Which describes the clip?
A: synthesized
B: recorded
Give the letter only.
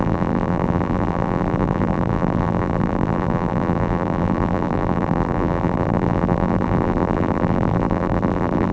A